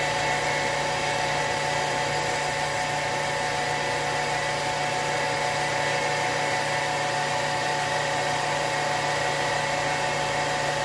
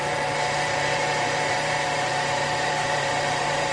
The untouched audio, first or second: first